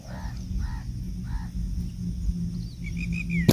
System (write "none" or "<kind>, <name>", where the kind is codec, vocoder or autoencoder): none